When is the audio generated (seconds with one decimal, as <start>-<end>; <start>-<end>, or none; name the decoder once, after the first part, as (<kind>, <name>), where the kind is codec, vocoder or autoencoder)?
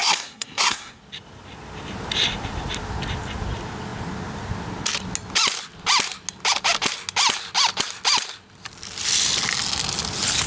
0.0-1.0 (codec, SNAC)